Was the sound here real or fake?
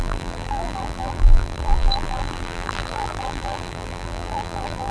fake